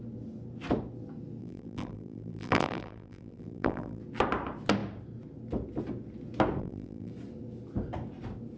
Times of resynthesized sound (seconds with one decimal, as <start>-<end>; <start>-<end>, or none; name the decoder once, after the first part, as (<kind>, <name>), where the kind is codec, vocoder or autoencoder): 1.4-4.0 (vocoder, BigVGAN v2); 6.6-7.1